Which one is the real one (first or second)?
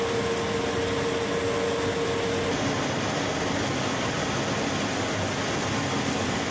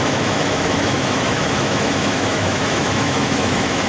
first